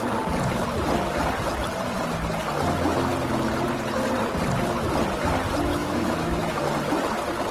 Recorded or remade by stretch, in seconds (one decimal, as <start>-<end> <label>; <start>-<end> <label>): 0.0-5.7 recorded; 5.7-6.6 remade; 6.6-7.5 recorded